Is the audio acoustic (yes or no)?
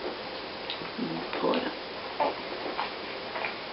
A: yes